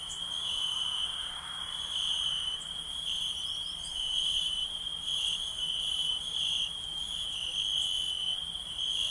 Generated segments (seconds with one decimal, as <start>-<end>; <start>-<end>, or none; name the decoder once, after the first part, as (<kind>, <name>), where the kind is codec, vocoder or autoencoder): 0.0-7.5 (vocoder, BigVGAN v2); 8.6-9.1